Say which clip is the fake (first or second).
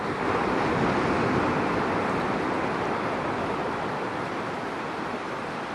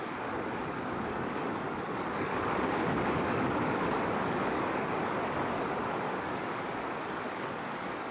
second